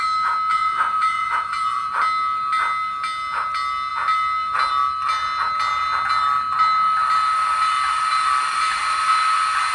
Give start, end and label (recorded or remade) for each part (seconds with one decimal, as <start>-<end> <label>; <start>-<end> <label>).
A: 0.0-0.5 recorded; 0.5-1.9 remade; 1.9-9.7 recorded